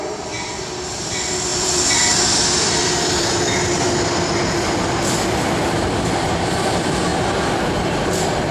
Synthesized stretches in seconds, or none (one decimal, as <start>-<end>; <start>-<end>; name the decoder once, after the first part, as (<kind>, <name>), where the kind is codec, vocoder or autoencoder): 0.0-7.1 (vocoder, BigVGAN v2); 8.1-8.5